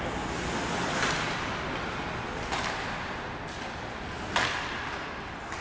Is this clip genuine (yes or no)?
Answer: yes